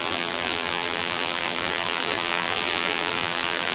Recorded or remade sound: remade